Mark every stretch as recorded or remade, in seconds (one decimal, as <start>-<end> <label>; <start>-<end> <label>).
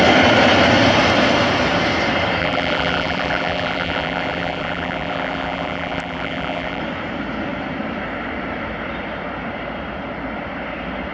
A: 0.0-2.4 recorded; 2.4-6.8 remade; 6.8-11.1 recorded